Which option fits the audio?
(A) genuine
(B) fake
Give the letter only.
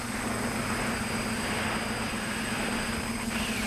A